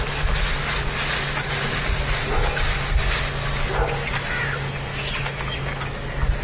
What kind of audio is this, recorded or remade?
recorded